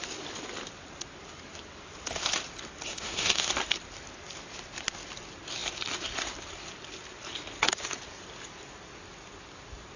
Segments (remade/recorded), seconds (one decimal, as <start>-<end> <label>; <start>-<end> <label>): 0.0-2.9 recorded; 2.9-3.5 remade; 3.5-10.0 recorded